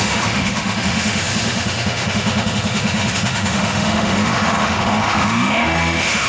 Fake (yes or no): yes